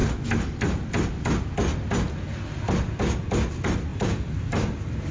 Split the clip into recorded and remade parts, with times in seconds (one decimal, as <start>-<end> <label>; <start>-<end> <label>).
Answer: 0.0-3.9 recorded; 3.9-5.1 remade